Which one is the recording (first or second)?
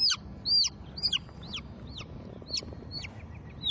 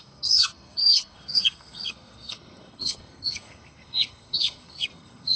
first